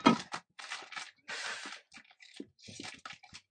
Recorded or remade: recorded